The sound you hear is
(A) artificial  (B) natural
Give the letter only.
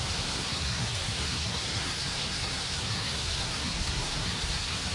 A